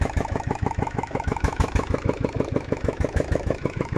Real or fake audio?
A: fake